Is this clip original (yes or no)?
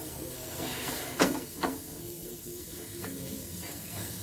no